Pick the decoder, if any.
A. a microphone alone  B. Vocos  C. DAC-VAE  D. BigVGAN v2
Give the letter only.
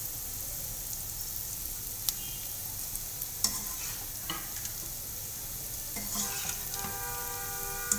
A